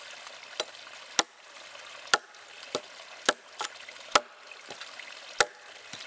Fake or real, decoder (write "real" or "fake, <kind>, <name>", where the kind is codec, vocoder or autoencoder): real